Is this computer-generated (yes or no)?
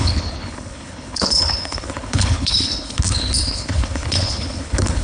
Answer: yes